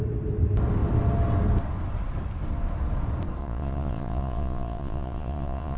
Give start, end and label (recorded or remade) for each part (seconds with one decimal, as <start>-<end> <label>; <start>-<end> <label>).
0.0-3.4 recorded; 3.4-5.8 remade